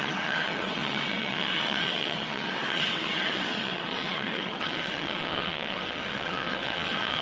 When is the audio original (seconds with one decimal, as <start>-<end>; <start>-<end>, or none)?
none